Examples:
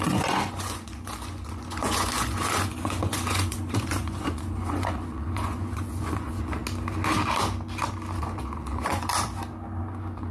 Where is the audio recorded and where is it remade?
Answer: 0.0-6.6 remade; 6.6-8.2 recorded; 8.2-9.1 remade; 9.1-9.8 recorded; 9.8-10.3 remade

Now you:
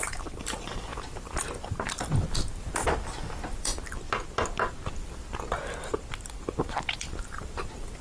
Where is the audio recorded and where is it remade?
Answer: 0.0-3.7 remade; 3.7-6.8 recorded; 6.8-8.0 remade